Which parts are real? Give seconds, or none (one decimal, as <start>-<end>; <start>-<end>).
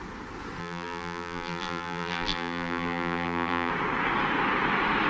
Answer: 0.0-0.6; 3.7-5.1